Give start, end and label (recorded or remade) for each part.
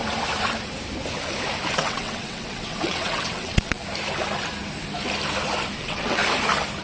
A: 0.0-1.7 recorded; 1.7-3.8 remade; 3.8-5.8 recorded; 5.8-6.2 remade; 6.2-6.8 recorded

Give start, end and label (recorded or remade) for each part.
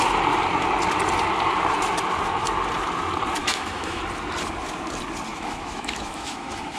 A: 0.0-3.4 recorded; 3.4-4.0 remade; 4.0-5.3 recorded; 5.3-6.8 remade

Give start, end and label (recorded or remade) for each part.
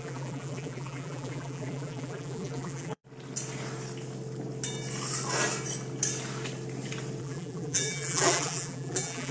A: 0.0-3.0 remade; 3.0-7.2 recorded; 7.2-9.3 remade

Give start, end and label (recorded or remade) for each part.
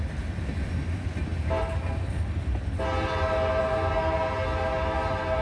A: 0.0-5.4 recorded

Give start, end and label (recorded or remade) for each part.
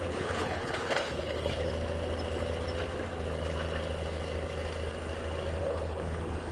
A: 0.0-1.7 remade; 1.7-5.6 recorded; 5.6-6.5 remade